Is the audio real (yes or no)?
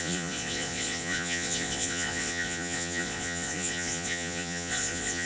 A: no